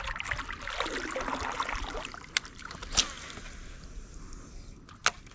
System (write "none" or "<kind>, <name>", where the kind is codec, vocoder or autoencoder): none